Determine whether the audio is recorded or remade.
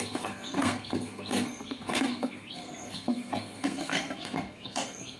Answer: remade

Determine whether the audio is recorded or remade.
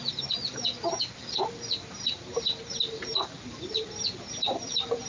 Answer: recorded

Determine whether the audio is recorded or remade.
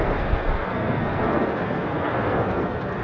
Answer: remade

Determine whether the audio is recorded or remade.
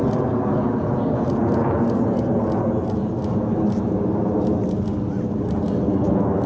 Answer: recorded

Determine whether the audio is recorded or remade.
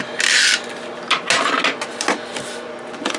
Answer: recorded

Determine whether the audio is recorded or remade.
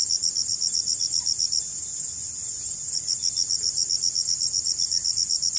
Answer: recorded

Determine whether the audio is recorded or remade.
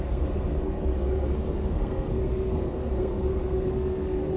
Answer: remade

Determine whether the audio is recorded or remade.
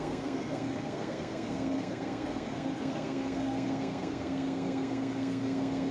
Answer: remade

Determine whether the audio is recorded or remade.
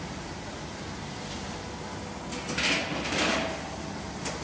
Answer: recorded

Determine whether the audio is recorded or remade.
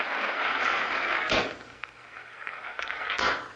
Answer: remade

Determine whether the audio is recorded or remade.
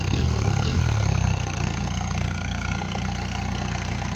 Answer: remade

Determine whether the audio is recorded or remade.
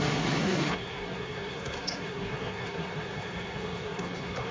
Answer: remade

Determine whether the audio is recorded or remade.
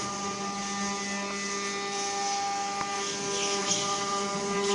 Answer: recorded